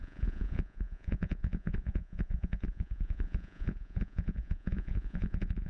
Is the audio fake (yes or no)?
yes